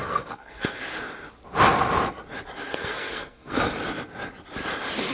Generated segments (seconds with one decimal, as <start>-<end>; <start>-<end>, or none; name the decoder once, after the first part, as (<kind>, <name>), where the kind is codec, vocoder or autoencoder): 0.0-0.8 (codec, SNAC); 2.7-3.6